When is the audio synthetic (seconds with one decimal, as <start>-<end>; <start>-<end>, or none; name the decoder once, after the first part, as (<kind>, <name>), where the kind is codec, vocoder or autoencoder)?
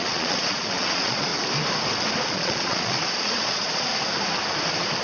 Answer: 0.0-1.3 (vocoder, Vocos); 2.3-3.9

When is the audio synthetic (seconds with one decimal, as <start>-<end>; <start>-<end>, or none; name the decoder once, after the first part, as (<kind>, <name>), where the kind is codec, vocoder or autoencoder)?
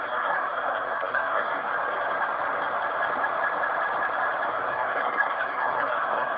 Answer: 0.0-1.7 (codec, SNAC); 4.5-6.4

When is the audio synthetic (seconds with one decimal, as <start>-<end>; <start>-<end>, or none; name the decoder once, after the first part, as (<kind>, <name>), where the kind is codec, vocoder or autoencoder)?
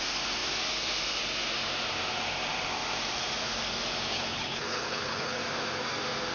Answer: 4.1-5.4 (codec, HILCodec)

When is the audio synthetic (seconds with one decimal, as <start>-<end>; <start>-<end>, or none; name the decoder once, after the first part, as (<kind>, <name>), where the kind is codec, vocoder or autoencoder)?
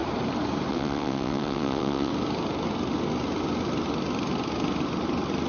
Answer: 0.7-2.1 (vocoder, WaveNeXt)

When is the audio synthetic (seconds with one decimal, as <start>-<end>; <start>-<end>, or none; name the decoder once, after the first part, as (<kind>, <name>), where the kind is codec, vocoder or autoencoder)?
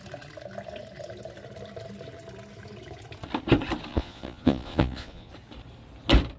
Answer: 3.9-5.3 (vocoder, Vocos)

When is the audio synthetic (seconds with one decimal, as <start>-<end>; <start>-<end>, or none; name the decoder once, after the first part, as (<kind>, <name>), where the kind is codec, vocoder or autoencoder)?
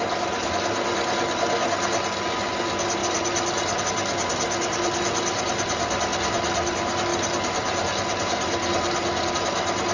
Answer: none